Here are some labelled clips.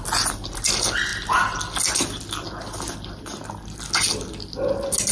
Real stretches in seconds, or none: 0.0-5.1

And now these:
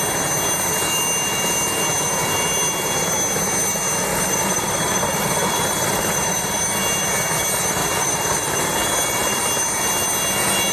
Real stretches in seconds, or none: 0.0-4.1; 6.6-7.8; 9.4-10.7

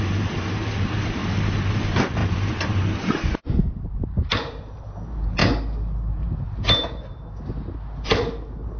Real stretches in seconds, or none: 1.2-1.7; 5.4-8.8

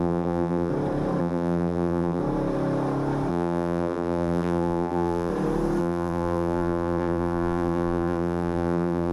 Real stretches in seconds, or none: 0.7-1.2; 2.2-3.3; 5.3-5.8

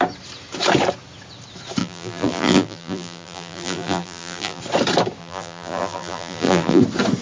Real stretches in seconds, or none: 0.0-1.8; 4.6-5.2; 6.8-7.2